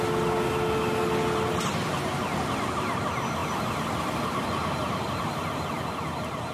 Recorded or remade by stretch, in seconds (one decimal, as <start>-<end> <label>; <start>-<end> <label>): 0.0-6.5 recorded